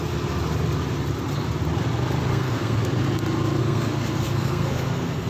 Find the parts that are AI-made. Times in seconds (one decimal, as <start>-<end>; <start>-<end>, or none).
2.3-2.9; 3.6-5.3